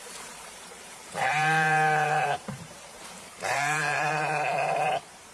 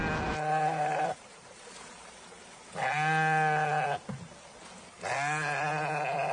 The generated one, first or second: first